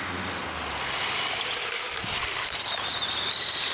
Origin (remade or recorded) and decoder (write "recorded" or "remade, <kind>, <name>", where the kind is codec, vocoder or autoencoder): recorded